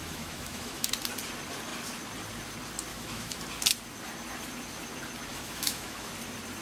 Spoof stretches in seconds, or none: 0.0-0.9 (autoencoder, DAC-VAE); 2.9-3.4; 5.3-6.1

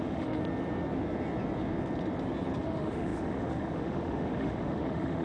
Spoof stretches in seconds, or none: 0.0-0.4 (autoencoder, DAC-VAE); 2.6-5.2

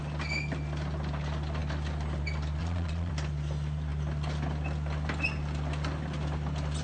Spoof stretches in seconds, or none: 2.6-3.1 (vocoder, Vocos)

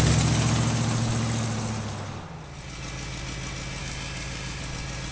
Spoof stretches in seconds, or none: 3.8-4.6 (codec, DAC)

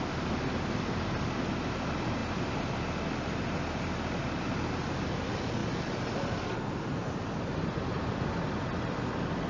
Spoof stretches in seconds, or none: none

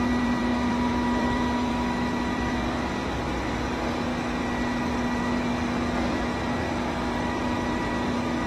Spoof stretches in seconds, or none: 0.0-4.1 (vocoder, BigVGAN v2); 5.2-8.5